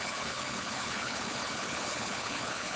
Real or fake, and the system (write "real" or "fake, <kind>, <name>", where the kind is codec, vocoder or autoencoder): fake, codec, HILCodec